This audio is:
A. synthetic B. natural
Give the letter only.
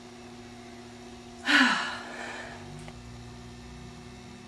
B